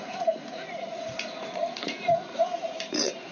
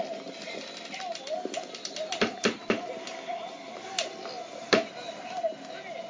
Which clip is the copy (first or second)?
first